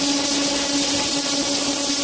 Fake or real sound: real